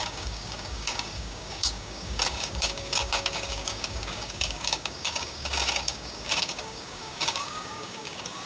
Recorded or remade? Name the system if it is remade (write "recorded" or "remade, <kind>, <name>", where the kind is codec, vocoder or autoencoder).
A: remade, codec, DAC